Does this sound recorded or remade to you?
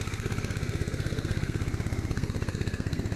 remade